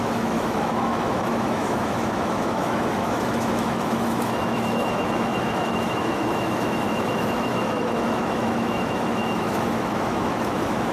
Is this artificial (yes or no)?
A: yes